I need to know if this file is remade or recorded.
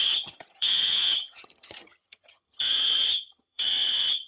remade